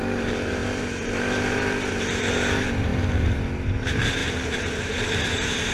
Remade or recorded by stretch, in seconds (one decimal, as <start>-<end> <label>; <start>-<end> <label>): 0.0-5.7 remade